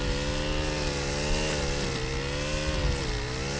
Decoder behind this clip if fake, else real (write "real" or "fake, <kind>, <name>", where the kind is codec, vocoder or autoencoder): real